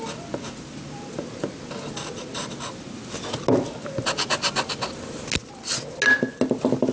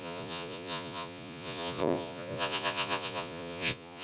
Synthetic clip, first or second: second